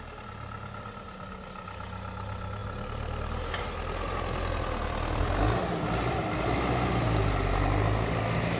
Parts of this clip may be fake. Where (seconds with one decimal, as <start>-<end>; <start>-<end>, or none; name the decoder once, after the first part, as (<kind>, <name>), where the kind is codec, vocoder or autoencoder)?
none